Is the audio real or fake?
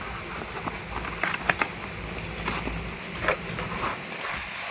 real